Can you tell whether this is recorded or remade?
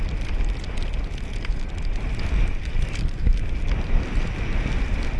recorded